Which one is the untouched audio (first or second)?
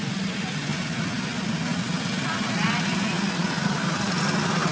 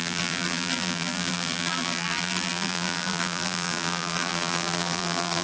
first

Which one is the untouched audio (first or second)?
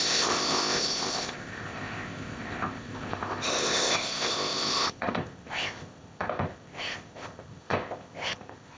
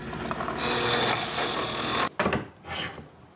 second